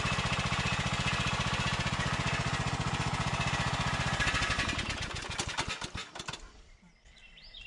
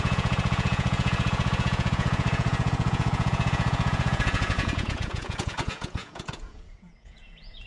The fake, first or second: second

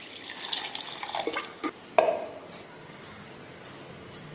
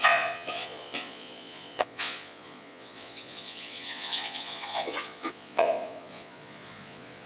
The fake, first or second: second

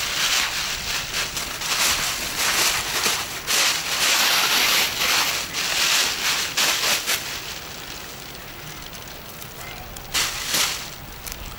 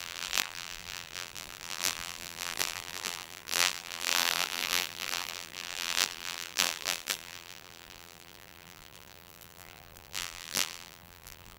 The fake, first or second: second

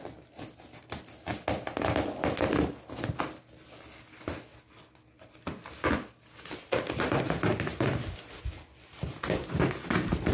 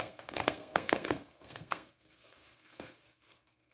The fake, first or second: second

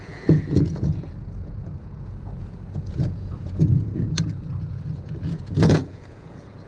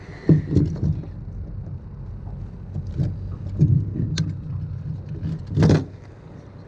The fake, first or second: first